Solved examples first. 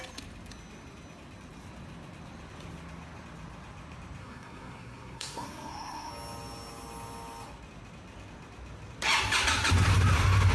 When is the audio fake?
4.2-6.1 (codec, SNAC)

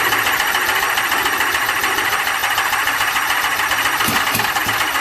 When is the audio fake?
none

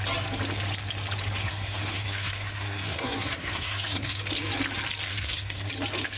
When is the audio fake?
1.4-4.2 (codec, SNAC); 5.1-5.7

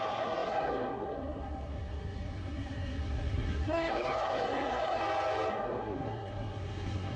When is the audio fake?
0.0-5.0 (codec, SNAC); 5.5-7.2

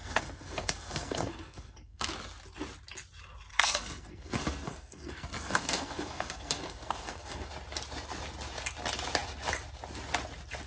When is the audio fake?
0.0-2.1 (codec, SNAC); 3.5-7.5

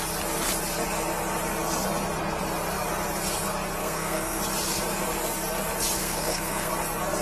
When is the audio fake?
3.8-4.4 (codec, SNAC); 6.0-6.7

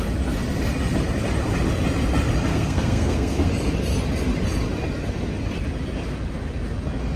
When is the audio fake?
2.5-3.5 (codec, SNAC)